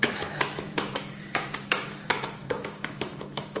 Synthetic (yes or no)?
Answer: yes